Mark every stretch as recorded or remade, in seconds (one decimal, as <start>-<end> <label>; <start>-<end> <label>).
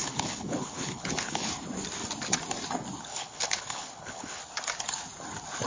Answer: 0.0-1.5 remade; 1.5-3.1 recorded; 3.1-4.4 remade; 4.4-5.7 recorded